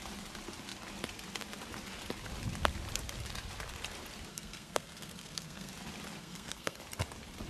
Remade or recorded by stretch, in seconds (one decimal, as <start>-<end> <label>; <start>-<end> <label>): 0.0-4.3 recorded; 4.3-5.7 remade; 5.7-6.2 recorded; 6.2-6.8 remade; 6.8-7.5 recorded